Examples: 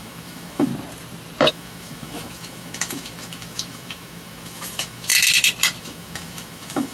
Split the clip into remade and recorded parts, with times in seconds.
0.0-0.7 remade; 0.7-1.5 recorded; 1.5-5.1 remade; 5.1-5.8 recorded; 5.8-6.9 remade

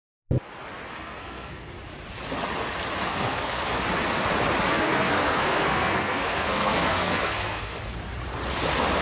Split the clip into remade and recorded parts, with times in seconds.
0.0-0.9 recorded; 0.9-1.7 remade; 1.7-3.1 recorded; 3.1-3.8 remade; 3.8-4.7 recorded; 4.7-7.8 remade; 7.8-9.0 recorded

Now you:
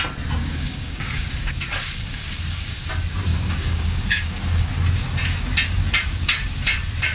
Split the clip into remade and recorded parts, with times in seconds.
0.0-0.4 recorded; 0.4-2.9 remade; 2.9-3.3 recorded; 3.3-4.7 remade; 4.7-7.1 recorded